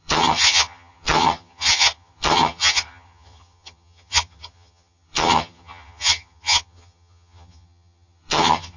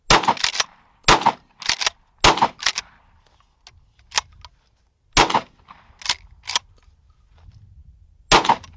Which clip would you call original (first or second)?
second